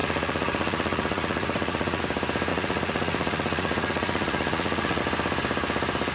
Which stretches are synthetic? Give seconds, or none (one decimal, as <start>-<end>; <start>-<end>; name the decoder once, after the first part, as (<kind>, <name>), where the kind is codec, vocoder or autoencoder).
0.0-2.0 (vocoder, Vocos); 2.5-5.0